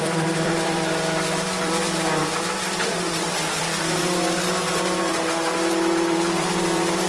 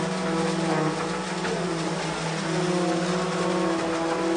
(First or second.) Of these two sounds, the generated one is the first